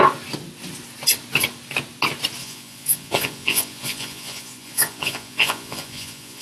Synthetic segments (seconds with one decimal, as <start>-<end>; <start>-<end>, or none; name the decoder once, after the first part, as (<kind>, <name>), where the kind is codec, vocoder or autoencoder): 2.4-6.4 (vocoder, Vocos)